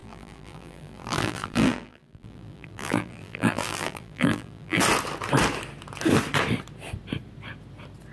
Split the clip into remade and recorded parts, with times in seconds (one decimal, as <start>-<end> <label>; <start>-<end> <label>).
0.0-4.8 remade; 4.8-8.1 recorded